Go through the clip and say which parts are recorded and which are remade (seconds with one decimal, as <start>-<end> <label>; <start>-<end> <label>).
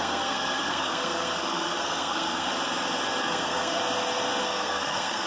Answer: 0.0-2.5 remade; 2.5-3.2 recorded; 3.2-3.8 remade; 3.8-4.4 recorded; 4.4-5.3 remade